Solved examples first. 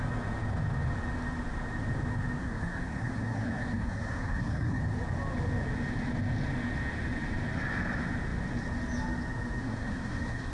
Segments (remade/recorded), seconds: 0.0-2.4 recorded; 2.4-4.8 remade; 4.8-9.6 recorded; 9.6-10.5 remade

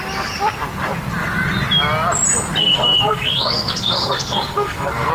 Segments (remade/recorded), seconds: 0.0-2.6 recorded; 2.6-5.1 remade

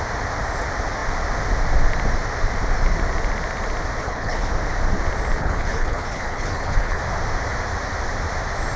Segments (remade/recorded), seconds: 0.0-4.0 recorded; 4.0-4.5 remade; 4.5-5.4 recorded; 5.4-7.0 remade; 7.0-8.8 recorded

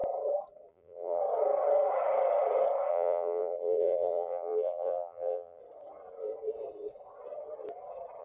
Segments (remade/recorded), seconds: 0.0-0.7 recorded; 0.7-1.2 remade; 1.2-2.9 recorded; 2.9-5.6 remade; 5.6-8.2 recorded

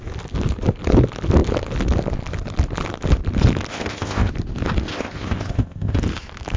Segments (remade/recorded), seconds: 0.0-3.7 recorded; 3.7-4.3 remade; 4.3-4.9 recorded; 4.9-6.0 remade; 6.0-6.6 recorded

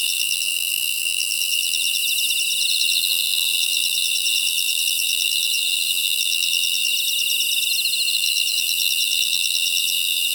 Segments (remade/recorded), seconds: 0.0-2.0 remade; 2.0-2.7 recorded; 2.7-6.9 remade; 6.9-8.1 recorded; 8.1-10.3 remade